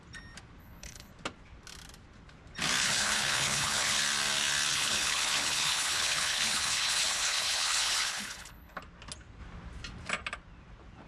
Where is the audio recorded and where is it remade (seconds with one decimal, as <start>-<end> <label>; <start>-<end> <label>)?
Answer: 0.0-0.6 recorded; 0.6-1.1 remade; 1.1-2.8 recorded; 2.8-4.0 remade; 4.0-4.7 recorded; 4.7-8.8 remade; 8.8-11.1 recorded